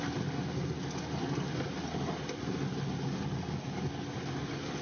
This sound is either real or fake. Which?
real